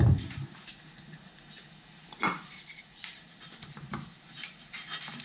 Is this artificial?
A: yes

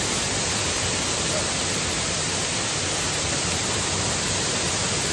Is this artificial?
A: no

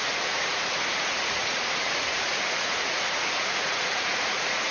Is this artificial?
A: yes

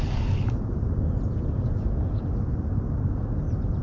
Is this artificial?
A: no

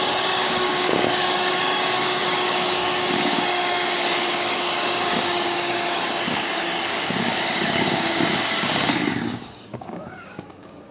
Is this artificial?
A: yes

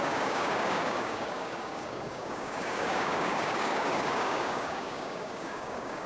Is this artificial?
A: yes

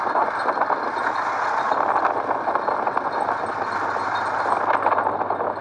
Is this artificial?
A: no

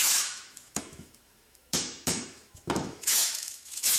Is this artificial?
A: yes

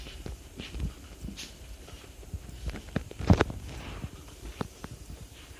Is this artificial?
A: yes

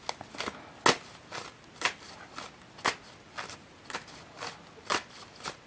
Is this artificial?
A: no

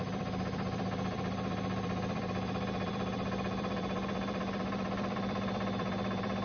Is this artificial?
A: yes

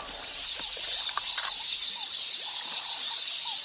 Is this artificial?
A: no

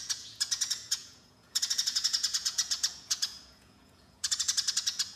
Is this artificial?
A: yes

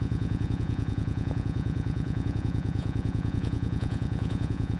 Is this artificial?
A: yes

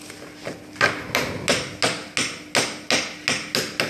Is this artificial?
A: no